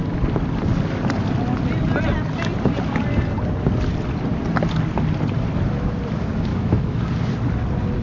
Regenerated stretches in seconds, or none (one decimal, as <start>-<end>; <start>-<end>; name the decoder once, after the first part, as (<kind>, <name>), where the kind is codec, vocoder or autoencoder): 6.5-7.0 (autoencoder, DAC-VAE)